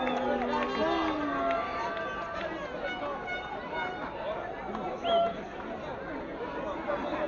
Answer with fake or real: real